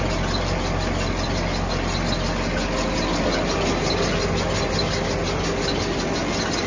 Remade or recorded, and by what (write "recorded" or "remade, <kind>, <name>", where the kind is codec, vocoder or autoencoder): recorded